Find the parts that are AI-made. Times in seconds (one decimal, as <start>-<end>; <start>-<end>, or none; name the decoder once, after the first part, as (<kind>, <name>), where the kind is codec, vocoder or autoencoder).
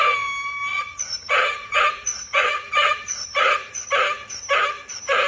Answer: 0.7-3.9 (vocoder, Vocos)